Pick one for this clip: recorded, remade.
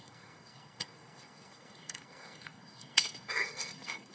remade